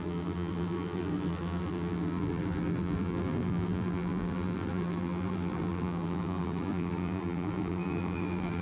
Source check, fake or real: fake